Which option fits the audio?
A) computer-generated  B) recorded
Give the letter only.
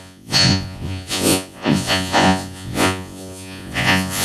A